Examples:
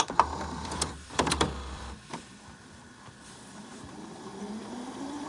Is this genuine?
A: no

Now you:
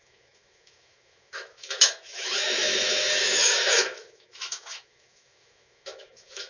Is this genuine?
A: no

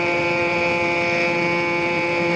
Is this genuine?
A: no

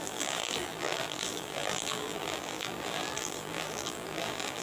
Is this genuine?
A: no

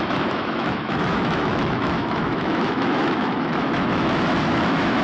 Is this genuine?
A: no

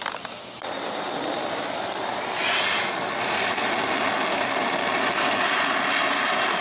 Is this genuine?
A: no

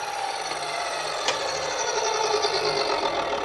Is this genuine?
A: yes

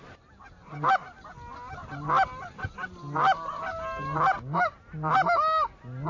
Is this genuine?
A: yes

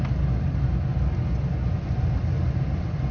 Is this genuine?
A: yes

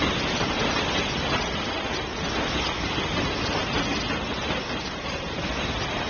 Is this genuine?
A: yes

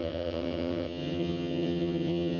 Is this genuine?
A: no